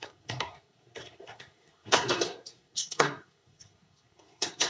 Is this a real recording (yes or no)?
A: no